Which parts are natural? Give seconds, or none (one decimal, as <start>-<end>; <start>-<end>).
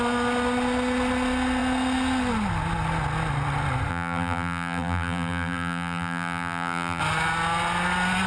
0.0-3.9; 7.0-8.3